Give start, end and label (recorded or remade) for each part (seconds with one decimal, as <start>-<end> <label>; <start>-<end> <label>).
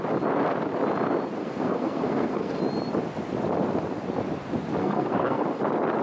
0.0-1.4 recorded; 1.4-2.6 remade; 2.6-4.8 recorded; 4.8-5.6 remade; 5.6-6.0 recorded